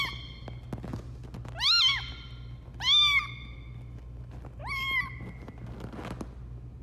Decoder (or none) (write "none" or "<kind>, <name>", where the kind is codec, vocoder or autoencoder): none